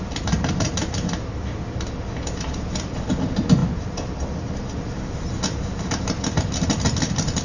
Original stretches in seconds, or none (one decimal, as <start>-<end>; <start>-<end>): 0.0-7.4